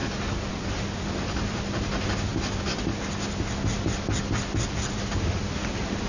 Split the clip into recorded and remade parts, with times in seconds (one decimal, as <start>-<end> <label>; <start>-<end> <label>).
0.0-6.1 recorded